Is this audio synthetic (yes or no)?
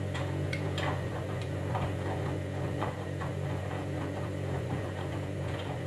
yes